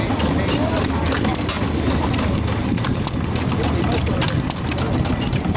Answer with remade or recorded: recorded